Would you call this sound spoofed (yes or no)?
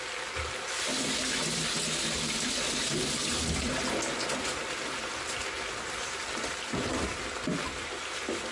no